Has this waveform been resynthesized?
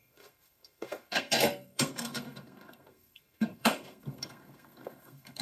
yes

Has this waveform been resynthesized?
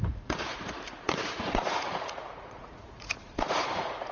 yes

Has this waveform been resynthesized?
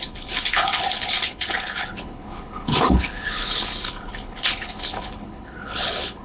yes